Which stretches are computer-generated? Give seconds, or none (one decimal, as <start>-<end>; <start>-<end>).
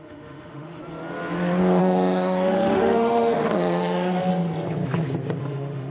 0.0-0.8; 1.8-4.3; 5.4-5.9